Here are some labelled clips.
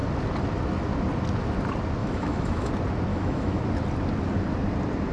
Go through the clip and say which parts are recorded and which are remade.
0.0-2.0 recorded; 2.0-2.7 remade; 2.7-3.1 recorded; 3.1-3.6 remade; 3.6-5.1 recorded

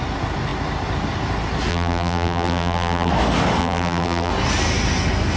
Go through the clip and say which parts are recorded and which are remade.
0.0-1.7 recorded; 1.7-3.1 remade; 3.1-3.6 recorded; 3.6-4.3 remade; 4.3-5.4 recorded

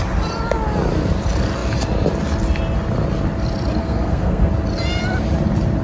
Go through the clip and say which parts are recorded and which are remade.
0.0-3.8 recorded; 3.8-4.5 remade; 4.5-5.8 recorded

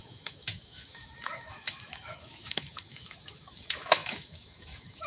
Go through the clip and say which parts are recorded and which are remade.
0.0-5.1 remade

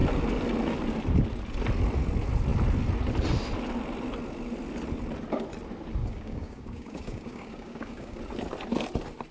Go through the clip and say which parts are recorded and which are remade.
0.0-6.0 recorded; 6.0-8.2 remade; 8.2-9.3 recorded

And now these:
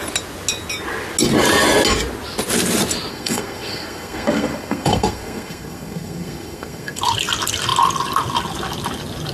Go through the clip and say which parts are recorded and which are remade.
0.0-3.1 recorded; 3.1-7.0 remade; 7.0-9.3 recorded